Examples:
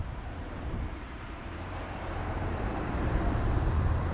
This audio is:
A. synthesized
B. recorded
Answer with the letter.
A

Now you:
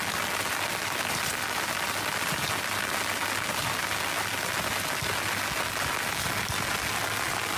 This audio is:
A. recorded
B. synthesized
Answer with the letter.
A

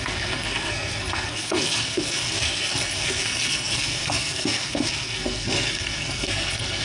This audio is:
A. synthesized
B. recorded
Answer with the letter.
A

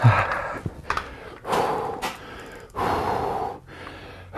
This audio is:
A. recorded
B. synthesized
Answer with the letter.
A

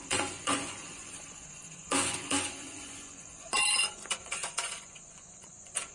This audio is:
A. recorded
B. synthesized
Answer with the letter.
B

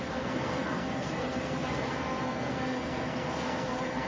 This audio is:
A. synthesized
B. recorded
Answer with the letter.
A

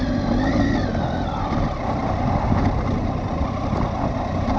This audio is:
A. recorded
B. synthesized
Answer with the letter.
A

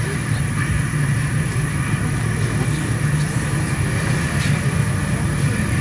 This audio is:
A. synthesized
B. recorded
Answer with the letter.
B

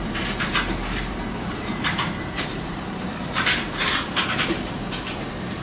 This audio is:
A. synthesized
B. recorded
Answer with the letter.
A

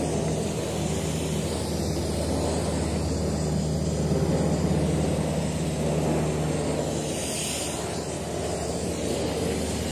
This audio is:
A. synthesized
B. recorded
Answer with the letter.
B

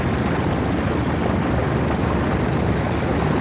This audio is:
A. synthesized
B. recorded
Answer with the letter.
B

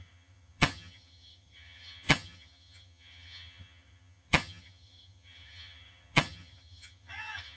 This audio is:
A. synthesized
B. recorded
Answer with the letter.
A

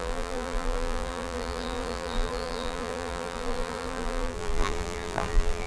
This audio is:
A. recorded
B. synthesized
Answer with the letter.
B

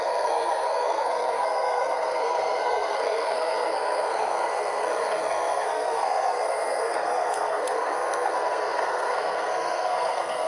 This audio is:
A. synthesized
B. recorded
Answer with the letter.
A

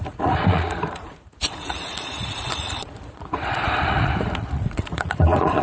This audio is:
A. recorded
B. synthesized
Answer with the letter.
B